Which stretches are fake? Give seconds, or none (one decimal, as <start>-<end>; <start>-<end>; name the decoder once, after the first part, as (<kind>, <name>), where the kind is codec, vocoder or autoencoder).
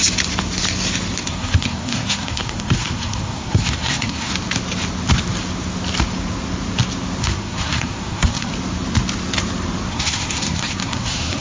1.2-4.3 (codec, SNAC); 7.2-8.5; 9.9-11.4